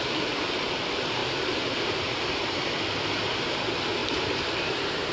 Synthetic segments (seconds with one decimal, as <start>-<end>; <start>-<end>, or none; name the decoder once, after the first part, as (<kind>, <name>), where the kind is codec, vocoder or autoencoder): 1.2-2.6 (vocoder, BigVGAN v2); 4.0-5.1